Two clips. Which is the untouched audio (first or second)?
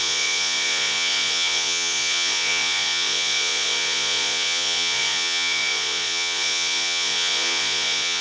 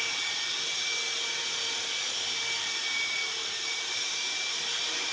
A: second